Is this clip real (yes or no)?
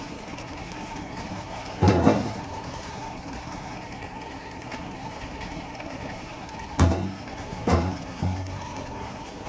no